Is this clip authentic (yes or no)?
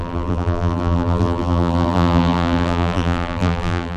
no